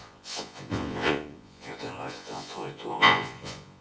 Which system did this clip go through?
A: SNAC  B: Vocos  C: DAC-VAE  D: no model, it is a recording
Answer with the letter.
B